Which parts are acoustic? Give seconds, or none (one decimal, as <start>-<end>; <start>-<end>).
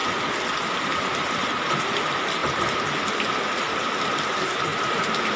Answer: 0.0-1.9; 2.4-3.9; 4.7-5.4